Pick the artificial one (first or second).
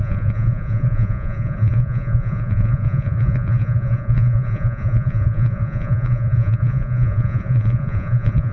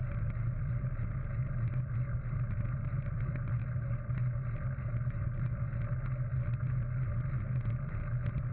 first